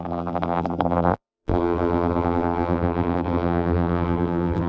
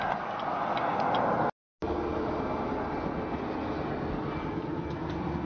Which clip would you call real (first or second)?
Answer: second